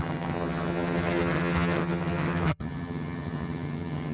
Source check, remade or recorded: remade